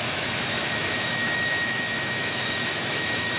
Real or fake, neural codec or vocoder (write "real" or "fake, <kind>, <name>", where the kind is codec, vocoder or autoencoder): fake, autoencoder, DAC-VAE